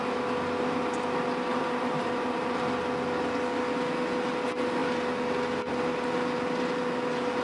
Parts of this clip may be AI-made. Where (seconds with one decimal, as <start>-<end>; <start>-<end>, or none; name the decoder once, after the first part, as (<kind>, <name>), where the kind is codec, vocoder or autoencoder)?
1.5-2.6 (vocoder, BigVGAN v2)